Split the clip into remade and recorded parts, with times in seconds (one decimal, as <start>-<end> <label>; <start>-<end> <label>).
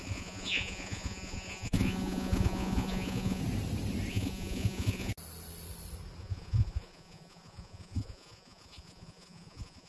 0.0-3.4 remade; 3.4-4.1 recorded; 4.1-5.1 remade; 5.1-6.2 recorded; 6.2-9.9 remade